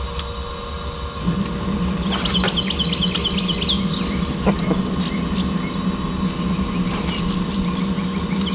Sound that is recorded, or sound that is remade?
recorded